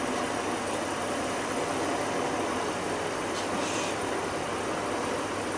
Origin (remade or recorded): recorded